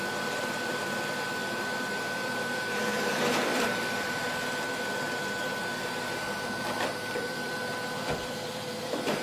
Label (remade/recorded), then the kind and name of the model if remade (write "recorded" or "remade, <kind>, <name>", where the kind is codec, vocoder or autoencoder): remade, vocoder, BigVGAN v2